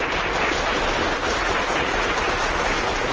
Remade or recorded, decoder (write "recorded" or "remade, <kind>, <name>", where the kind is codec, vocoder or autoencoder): recorded